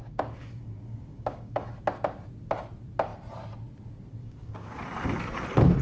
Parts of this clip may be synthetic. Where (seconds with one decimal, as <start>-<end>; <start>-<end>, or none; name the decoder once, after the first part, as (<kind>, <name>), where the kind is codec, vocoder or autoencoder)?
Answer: 0.0-1.7 (codec, DAC); 4.2-4.8